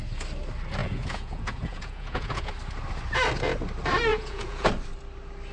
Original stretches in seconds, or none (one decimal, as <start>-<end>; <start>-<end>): 0.0-0.8; 2.5-4.1; 4.7-5.5